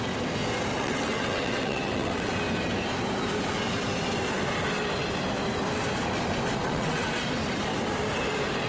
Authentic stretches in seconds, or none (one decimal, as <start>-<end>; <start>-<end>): 0.0-0.7; 2.3-6.6; 7.2-8.7